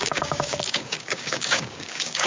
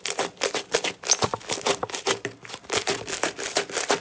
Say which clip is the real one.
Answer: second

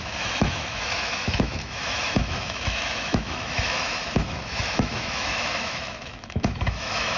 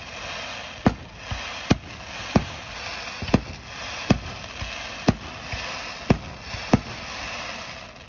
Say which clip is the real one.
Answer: second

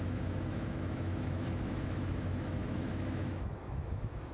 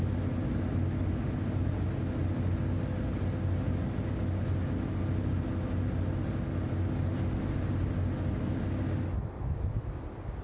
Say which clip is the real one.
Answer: second